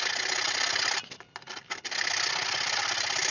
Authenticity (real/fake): real